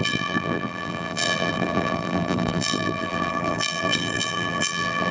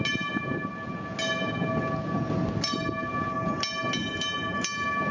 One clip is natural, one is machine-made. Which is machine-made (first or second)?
first